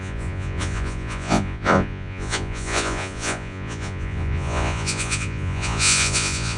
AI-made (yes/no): yes